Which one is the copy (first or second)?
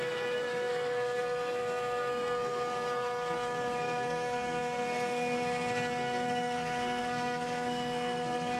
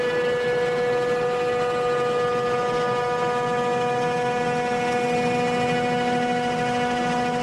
first